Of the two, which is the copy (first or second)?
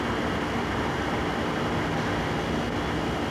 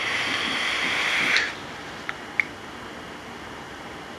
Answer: second